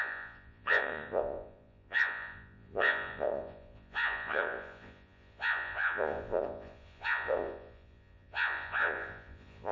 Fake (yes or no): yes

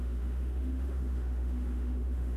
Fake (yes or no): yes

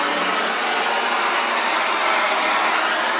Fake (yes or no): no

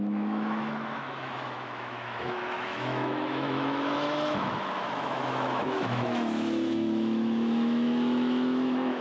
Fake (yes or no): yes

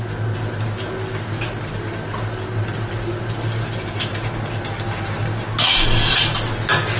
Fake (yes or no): no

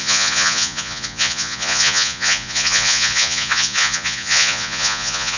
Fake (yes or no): yes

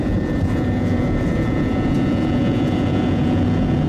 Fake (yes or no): yes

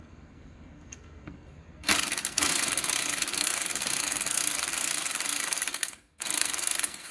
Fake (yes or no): yes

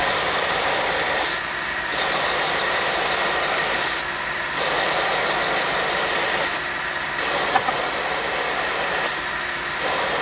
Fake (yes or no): yes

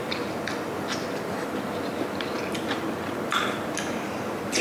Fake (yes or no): no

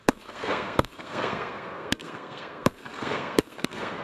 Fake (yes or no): yes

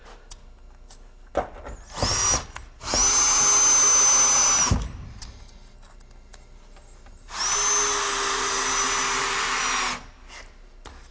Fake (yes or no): no